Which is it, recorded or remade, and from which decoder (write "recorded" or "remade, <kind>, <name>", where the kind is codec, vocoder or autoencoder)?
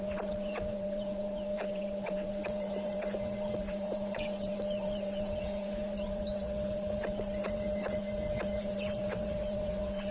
remade, vocoder, WaveNeXt